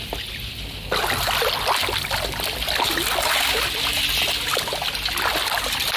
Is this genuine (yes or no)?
yes